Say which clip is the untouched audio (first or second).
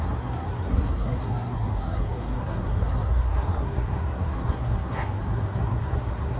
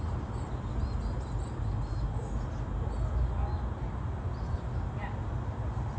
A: second